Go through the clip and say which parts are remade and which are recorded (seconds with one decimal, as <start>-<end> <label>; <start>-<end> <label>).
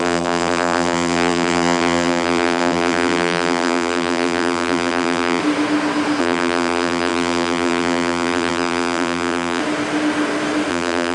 0.0-5.4 remade; 5.4-6.2 recorded; 6.2-9.6 remade; 9.6-10.7 recorded; 10.7-11.1 remade